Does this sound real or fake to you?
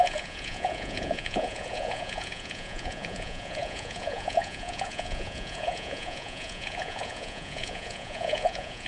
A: fake